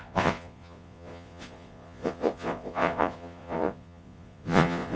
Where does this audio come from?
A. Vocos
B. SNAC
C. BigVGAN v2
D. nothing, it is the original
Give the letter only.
A